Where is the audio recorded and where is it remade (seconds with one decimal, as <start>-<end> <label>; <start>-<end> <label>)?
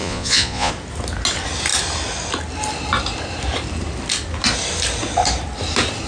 0.0-0.7 remade; 0.7-6.1 recorded